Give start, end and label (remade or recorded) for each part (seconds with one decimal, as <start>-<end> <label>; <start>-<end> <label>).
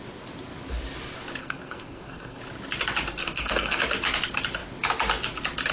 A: 0.0-1.4 recorded; 1.4-2.4 remade; 2.4-3.2 recorded; 3.2-3.8 remade; 3.8-5.7 recorded